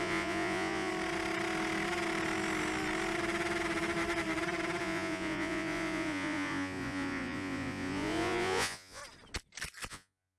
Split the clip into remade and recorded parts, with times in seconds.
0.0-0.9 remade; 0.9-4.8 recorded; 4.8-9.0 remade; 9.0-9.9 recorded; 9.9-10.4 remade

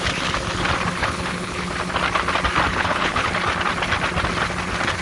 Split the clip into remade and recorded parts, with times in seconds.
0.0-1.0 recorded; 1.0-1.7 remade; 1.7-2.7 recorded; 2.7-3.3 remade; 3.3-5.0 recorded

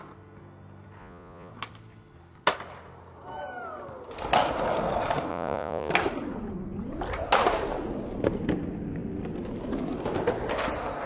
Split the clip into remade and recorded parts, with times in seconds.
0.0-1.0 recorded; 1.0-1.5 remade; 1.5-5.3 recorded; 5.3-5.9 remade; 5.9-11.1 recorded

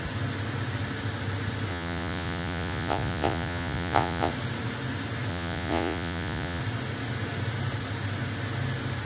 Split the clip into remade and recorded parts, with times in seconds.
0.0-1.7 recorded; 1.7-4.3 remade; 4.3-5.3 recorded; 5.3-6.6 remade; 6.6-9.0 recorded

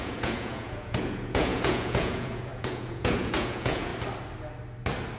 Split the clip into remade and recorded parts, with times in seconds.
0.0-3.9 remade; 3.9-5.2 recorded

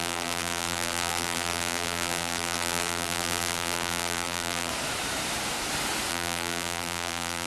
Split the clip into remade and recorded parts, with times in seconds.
0.0-4.7 remade; 4.7-6.1 recorded; 6.1-7.5 remade

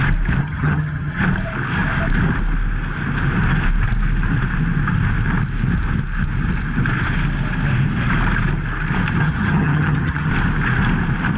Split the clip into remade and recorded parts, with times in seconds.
0.0-0.4 recorded; 0.4-1.2 remade; 1.2-9.2 recorded; 9.2-10.3 remade; 10.3-11.4 recorded

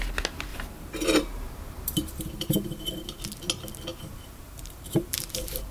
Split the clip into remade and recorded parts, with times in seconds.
0.0-0.5 recorded; 0.5-2.9 remade; 2.9-3.9 recorded; 3.9-5.7 remade